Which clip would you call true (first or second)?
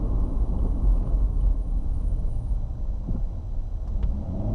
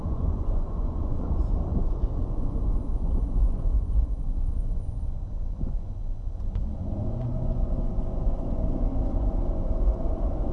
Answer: first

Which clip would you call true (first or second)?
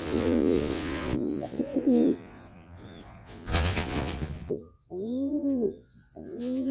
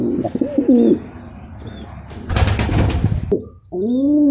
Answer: second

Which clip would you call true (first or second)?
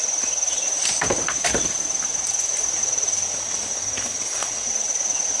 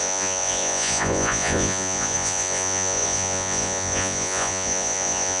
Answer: first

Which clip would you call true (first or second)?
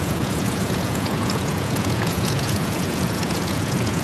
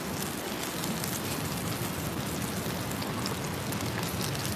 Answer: second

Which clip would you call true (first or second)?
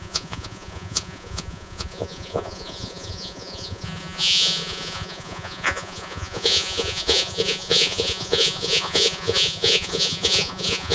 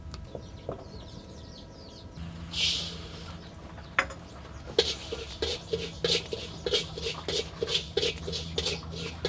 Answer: second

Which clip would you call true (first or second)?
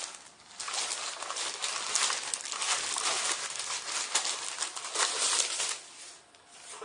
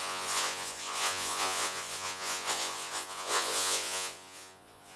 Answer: first